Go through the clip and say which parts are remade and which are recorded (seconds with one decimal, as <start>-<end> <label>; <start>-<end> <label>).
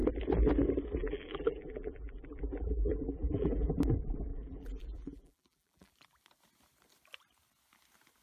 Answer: 0.0-1.0 recorded; 1.0-3.8 remade; 3.8-4.3 recorded; 4.3-5.9 remade; 5.9-8.2 recorded